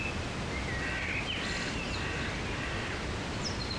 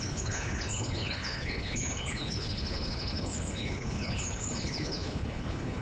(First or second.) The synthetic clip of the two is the second